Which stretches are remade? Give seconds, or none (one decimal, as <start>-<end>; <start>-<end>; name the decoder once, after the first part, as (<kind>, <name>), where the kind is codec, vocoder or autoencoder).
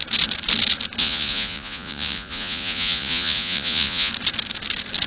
1.0-4.1 (vocoder, Vocos)